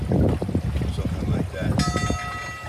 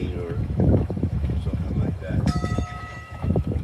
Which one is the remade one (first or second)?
second